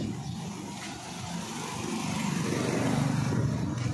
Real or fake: real